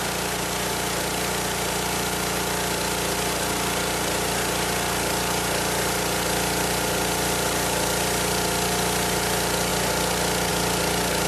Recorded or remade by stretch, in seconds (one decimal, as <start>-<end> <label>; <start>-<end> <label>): 0.0-11.3 recorded